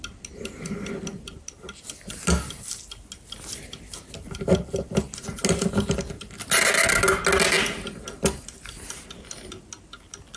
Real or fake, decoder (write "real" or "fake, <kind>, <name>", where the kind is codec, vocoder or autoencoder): real